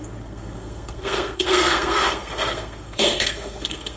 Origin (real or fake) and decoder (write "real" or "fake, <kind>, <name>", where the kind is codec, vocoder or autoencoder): fake, codec, SNAC